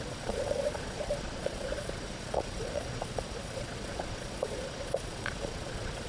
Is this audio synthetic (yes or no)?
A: yes